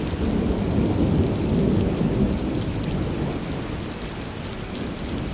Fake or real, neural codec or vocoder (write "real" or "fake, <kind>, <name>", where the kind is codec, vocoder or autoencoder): real